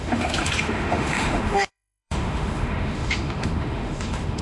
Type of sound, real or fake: fake